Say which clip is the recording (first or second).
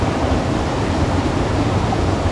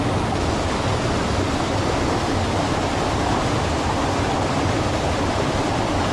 second